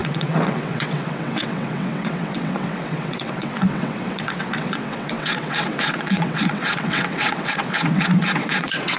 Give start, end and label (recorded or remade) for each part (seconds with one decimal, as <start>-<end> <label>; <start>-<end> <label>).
0.0-9.0 remade